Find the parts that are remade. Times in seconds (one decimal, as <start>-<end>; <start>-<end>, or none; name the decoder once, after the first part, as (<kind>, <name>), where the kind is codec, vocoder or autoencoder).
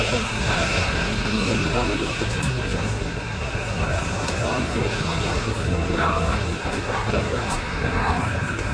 0.0-8.7 (codec, SNAC)